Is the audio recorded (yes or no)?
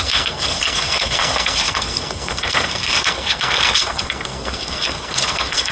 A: no